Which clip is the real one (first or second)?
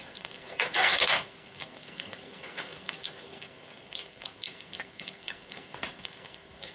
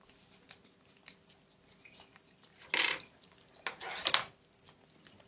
second